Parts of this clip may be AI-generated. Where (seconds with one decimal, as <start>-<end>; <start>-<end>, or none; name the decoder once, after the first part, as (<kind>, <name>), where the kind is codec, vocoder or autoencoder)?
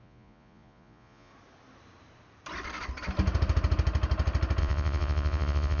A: 0.0-1.3 (vocoder, Vocos); 4.6-5.8